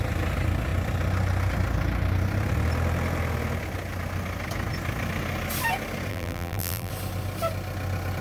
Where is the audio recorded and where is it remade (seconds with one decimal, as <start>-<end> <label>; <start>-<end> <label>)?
0.0-6.1 recorded; 6.1-6.9 remade; 6.9-8.2 recorded